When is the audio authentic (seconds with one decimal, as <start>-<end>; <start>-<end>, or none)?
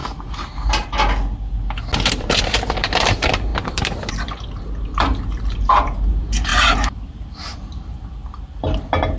0.0-2.1; 8.2-9.2